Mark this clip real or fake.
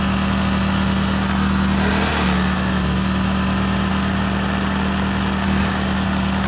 real